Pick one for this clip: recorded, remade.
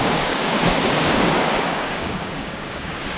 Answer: remade